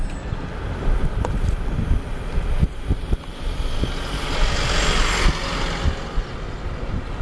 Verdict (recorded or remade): recorded